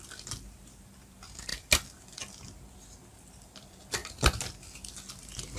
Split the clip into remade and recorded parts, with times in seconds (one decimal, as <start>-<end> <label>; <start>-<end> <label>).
0.0-5.6 recorded